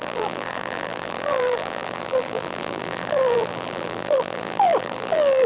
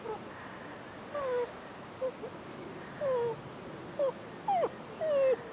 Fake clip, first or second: first